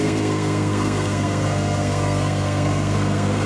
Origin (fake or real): fake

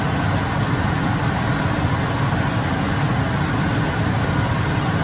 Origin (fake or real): real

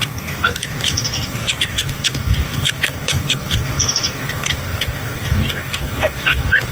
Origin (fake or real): fake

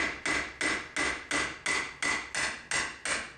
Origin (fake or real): real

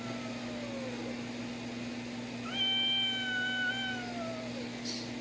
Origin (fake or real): real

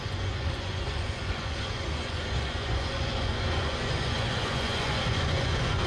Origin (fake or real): fake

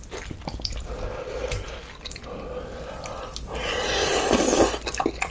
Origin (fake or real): real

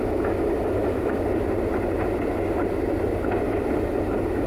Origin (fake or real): real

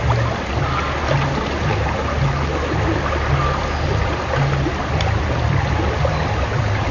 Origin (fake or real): real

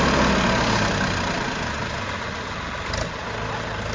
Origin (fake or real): real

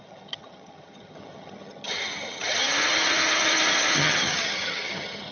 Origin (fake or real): fake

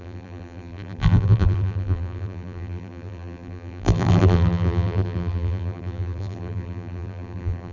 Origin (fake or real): fake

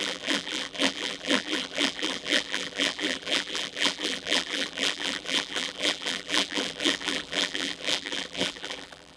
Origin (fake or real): fake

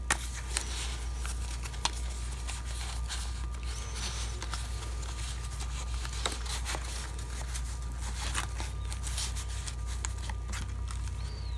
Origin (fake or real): real